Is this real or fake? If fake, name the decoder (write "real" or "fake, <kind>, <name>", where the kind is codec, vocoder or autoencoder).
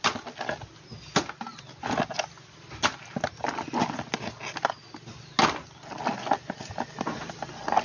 real